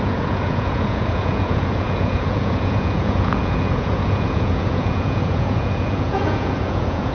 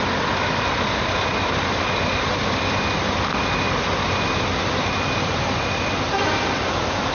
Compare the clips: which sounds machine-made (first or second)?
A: first